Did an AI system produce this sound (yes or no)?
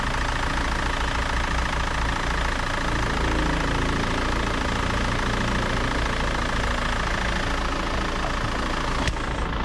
no